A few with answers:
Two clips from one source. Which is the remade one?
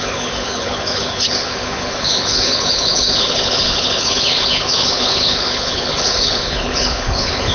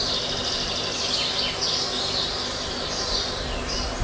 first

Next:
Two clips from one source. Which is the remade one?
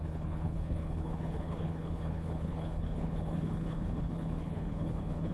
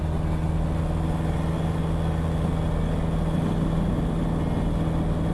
first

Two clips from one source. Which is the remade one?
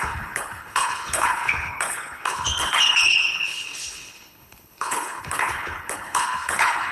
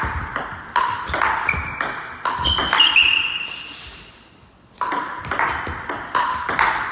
first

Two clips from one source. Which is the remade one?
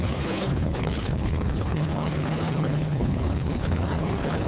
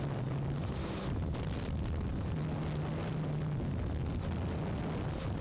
first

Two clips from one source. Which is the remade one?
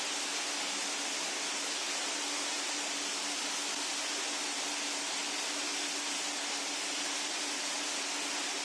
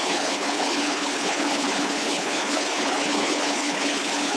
second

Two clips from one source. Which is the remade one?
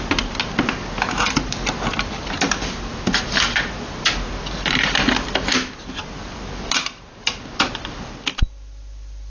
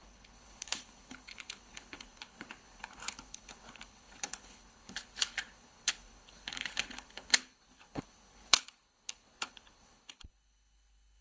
second